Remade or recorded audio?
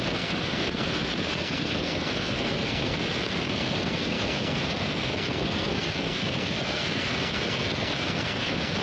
remade